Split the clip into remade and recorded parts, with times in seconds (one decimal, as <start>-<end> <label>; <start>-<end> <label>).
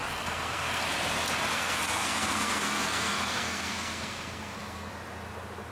0.0-0.8 remade; 0.8-1.5 recorded; 1.5-4.9 remade; 4.9-5.7 recorded